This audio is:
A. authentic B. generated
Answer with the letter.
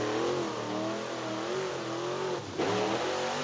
A